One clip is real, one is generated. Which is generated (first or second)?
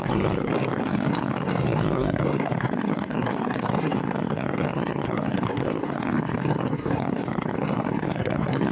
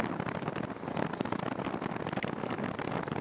first